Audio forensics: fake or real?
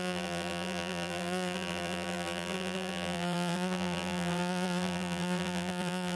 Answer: fake